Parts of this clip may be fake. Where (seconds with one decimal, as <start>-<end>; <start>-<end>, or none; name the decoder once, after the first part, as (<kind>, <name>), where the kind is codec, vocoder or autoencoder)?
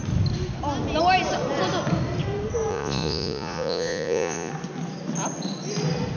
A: 2.7-4.5 (vocoder, Vocos)